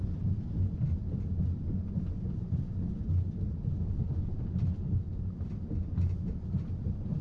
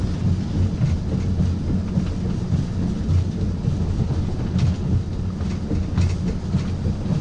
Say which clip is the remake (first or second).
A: first